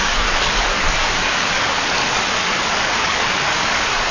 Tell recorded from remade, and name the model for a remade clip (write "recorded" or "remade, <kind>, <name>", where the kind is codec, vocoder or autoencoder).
remade, codec, DAC